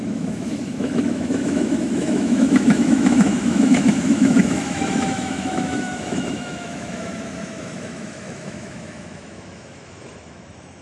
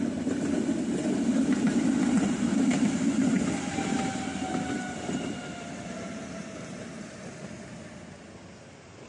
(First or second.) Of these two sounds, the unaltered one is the second